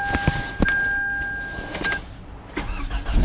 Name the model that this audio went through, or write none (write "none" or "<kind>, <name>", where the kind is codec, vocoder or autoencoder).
none